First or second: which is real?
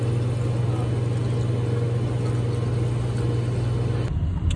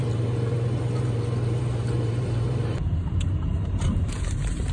first